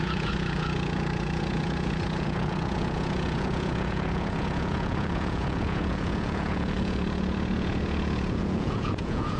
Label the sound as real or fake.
fake